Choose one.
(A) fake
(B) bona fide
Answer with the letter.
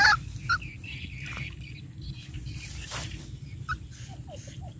B